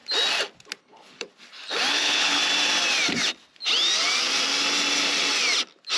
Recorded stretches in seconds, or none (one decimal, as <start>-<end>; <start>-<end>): 0.0-0.8; 1.3-1.9; 2.4-6.0